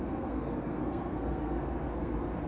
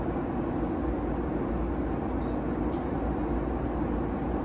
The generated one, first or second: first